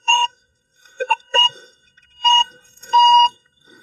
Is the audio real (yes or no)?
no